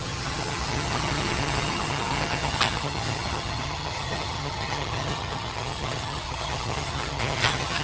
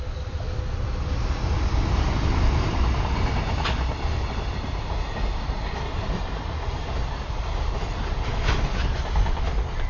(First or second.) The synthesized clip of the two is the first